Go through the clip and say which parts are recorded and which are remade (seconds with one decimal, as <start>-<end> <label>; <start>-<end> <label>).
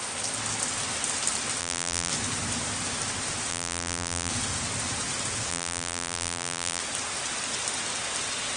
0.0-1.6 recorded; 1.6-2.1 remade; 2.1-3.5 recorded; 3.5-4.3 remade; 4.3-5.5 recorded; 5.5-6.8 remade; 6.8-8.6 recorded